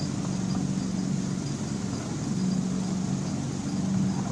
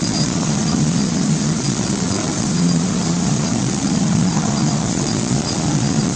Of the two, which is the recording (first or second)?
first